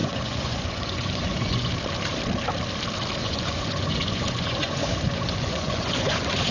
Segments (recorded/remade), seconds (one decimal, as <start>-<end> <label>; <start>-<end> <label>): 0.0-1.7 remade; 1.7-3.2 recorded; 3.2-6.5 remade